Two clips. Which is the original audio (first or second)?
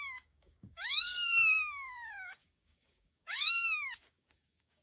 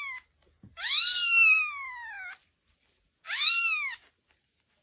second